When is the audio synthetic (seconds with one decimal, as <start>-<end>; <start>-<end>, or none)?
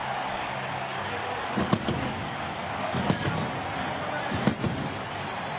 0.0-3.3